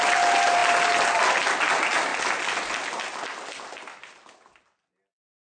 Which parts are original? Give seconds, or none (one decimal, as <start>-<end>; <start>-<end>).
0.0-5.4